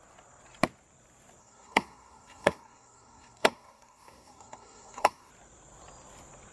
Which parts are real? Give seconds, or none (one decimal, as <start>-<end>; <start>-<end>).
0.0-1.4; 5.3-6.5